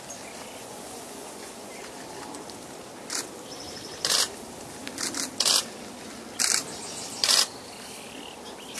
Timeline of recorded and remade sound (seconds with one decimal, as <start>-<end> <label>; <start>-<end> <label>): 0.0-0.6 recorded; 0.6-1.7 remade; 1.7-8.8 recorded